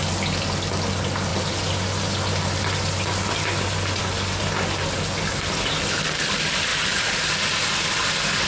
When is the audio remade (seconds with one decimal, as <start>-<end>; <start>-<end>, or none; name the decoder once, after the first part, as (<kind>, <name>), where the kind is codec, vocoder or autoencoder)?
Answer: 6.7-7.3 (vocoder, BigVGAN v2)